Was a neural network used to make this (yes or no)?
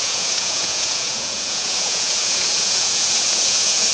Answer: yes